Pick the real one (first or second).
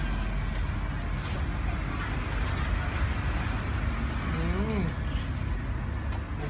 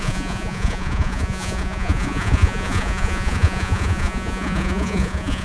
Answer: first